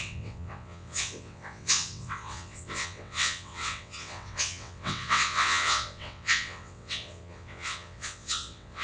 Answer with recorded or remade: remade